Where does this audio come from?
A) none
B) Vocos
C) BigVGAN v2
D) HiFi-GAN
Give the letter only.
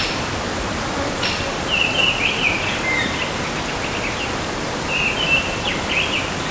A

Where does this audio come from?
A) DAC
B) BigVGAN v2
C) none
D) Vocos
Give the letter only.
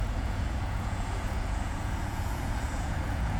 D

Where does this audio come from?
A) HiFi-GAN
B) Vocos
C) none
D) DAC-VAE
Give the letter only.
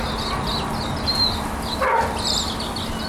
C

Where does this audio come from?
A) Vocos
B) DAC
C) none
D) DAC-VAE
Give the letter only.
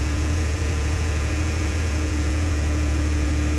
A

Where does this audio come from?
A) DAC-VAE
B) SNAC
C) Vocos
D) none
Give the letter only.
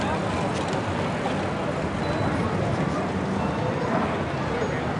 D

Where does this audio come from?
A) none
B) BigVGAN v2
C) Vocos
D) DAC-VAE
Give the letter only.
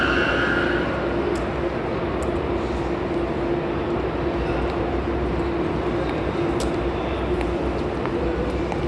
A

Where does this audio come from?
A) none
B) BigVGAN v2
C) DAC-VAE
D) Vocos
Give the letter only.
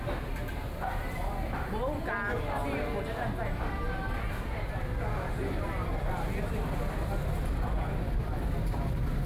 A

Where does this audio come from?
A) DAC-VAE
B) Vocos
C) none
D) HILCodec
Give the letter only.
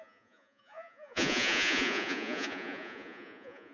B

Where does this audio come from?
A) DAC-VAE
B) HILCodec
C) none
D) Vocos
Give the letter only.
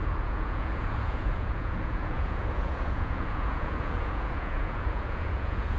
D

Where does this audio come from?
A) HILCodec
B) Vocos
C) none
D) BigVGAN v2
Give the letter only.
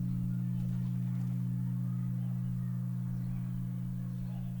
C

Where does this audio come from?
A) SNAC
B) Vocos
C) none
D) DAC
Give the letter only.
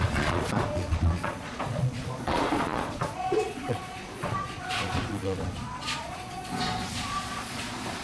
B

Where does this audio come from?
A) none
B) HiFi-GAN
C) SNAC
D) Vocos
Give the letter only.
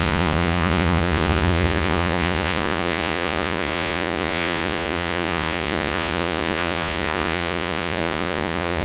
D